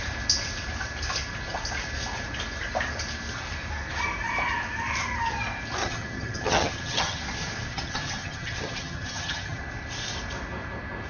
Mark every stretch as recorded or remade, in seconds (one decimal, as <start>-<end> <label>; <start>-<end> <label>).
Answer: 0.0-5.8 recorded; 5.8-7.2 remade; 7.2-7.7 recorded; 7.7-9.6 remade; 9.6-11.1 recorded